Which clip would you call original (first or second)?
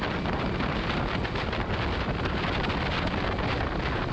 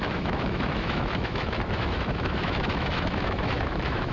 first